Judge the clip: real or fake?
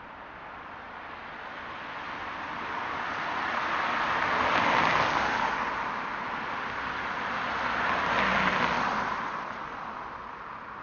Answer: real